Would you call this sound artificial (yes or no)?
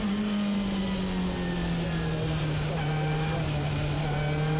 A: no